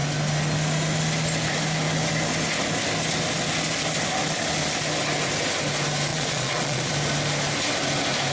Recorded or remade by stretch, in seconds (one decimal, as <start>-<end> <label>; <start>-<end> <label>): 0.0-6.1 recorded; 6.1-6.9 remade; 6.9-8.3 recorded